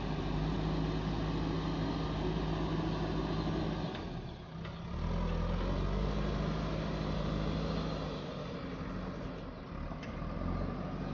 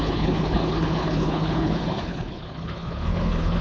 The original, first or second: first